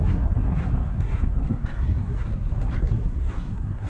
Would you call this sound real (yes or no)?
no